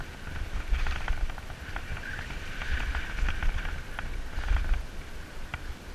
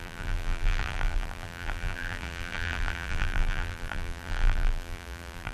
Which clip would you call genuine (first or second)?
first